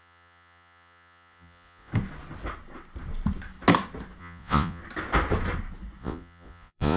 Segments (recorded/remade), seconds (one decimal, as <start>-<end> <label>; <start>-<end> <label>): 0.0-1.9 remade; 1.9-4.2 recorded; 4.2-4.8 remade; 4.8-6.0 recorded; 6.0-7.0 remade